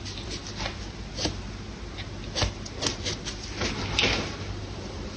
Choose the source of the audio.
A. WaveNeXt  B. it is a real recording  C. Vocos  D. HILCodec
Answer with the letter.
B